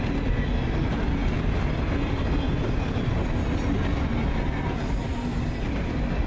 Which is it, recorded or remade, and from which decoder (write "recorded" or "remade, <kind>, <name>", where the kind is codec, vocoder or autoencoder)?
recorded